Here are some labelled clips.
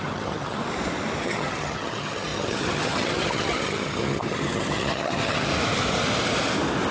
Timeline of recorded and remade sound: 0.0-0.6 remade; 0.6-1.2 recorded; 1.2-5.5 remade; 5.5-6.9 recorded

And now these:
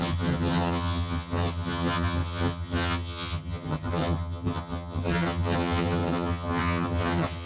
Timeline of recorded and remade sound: 0.0-7.5 remade

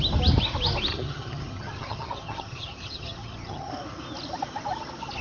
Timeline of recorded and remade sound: 0.0-0.9 recorded; 0.9-3.7 remade; 3.7-5.2 recorded

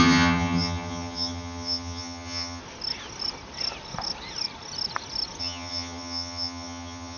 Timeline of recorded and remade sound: 0.0-2.6 remade; 2.6-5.4 recorded; 5.4-7.2 remade

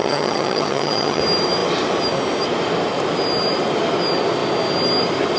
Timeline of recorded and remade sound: 0.0-1.2 remade; 1.2-5.4 recorded

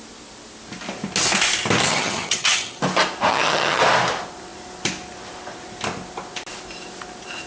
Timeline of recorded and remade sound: 0.0-1.8 recorded; 1.8-2.8 remade; 2.8-3.3 recorded; 3.3-3.8 remade; 3.8-7.5 recorded